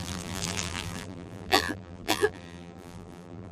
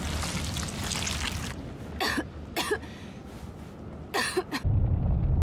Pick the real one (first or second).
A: second